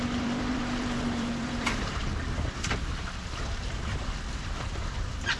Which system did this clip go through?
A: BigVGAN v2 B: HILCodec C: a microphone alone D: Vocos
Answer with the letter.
A